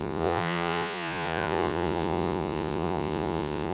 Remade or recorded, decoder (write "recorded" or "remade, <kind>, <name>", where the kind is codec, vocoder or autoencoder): remade, vocoder, Vocos